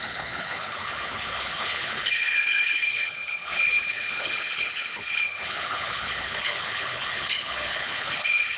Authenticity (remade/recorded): remade